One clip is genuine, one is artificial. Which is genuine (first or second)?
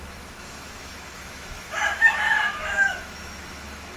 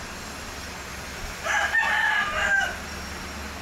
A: second